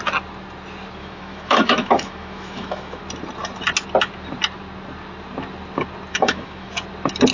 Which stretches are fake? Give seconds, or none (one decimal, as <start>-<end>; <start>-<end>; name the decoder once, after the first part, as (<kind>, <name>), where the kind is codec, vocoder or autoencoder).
1.0-3.0 (autoencoder, DAC-VAE); 6.1-6.7